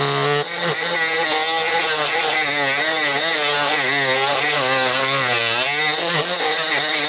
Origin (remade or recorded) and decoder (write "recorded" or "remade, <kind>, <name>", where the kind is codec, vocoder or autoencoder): recorded